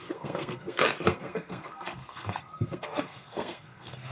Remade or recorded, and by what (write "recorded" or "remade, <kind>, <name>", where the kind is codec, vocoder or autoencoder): remade, codec, SNAC